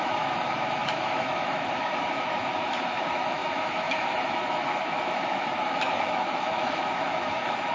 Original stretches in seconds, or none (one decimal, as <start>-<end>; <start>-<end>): none